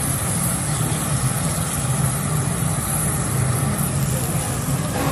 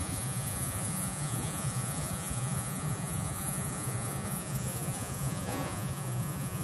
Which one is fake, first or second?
second